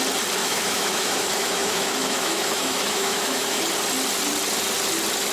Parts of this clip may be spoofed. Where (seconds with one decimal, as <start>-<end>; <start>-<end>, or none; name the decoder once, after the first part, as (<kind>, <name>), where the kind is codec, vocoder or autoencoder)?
0.4-3.6 (autoencoder, DAC-VAE)